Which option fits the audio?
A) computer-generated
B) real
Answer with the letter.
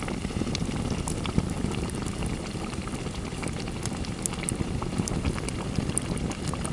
B